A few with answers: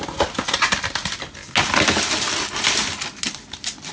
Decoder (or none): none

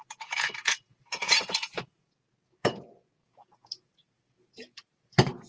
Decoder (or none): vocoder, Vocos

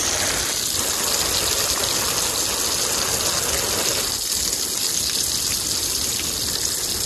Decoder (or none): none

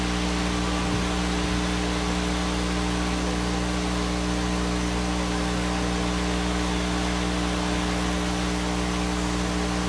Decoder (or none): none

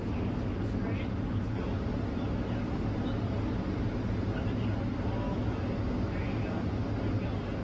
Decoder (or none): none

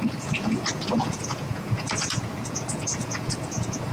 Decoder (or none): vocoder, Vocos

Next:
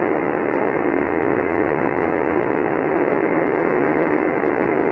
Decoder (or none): vocoder, Vocos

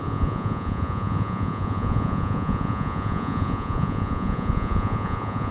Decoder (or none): vocoder, Vocos